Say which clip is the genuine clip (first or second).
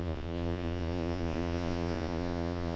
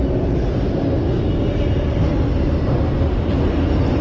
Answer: second